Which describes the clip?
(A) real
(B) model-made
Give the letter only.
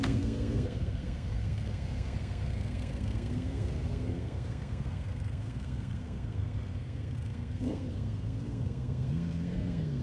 B